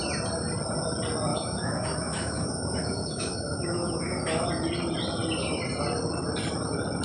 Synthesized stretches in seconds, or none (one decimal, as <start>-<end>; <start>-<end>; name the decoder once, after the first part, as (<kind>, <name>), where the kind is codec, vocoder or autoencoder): 1.3-4.5 (autoencoder, DAC-VAE)